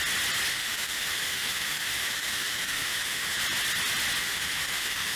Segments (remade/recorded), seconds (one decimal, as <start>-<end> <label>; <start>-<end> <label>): 0.0-0.5 recorded; 0.5-3.4 remade; 3.4-4.2 recorded; 4.2-5.2 remade